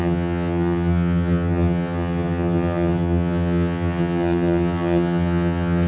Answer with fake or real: fake